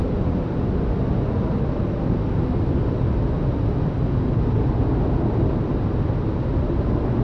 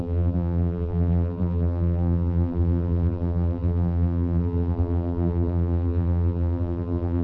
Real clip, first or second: first